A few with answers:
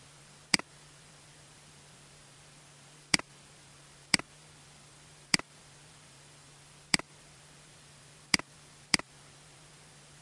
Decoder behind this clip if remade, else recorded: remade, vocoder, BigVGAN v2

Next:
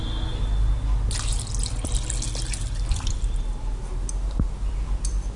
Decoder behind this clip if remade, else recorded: recorded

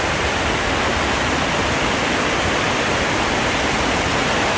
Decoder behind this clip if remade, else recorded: recorded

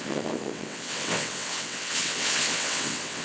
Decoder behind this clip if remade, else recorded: remade, vocoder, WaveNeXt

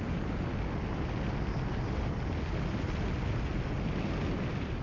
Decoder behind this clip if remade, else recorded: recorded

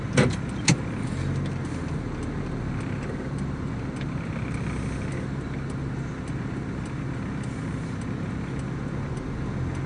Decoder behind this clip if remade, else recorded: recorded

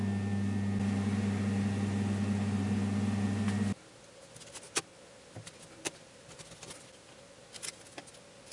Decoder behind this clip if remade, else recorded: recorded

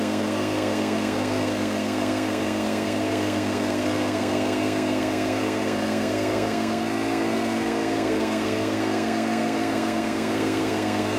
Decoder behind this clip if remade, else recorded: remade, codec, SNAC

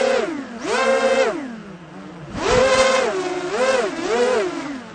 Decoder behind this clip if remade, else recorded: recorded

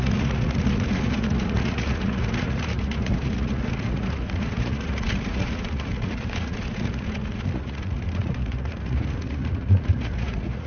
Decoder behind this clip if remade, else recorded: remade, vocoder, Vocos